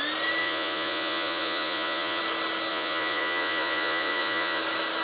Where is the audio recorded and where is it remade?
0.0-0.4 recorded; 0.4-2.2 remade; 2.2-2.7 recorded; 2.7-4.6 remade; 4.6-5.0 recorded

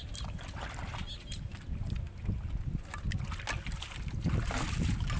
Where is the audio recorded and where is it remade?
0.0-5.2 recorded

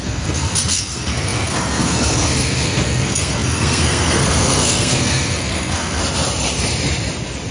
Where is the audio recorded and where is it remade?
0.0-6.0 remade; 6.0-7.5 recorded

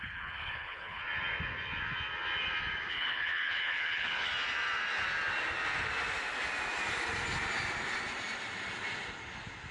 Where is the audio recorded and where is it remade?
0.0-1.0 remade; 1.0-2.9 recorded; 2.9-4.3 remade; 4.3-9.7 recorded

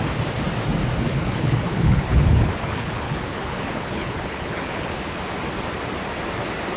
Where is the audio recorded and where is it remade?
0.0-1.1 recorded; 1.1-5.2 remade; 5.2-6.8 recorded

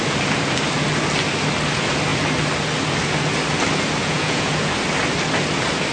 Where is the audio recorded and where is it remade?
0.0-4.0 recorded; 4.0-4.7 remade; 4.7-5.9 recorded

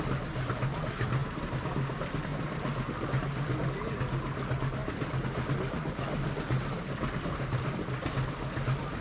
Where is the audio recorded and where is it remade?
0.0-9.0 recorded